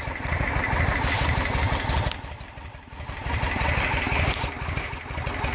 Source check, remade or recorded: recorded